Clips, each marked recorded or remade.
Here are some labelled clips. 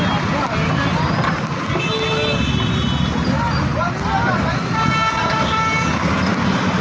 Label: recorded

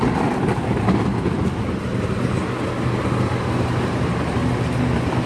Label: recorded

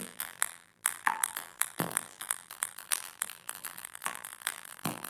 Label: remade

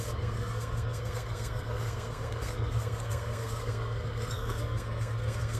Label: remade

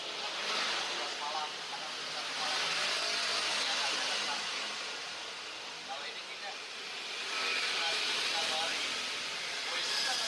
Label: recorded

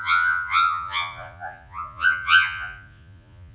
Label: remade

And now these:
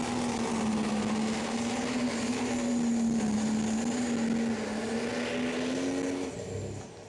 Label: recorded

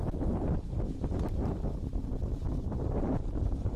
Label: remade